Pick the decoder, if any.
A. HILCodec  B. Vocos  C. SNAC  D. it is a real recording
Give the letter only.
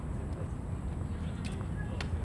D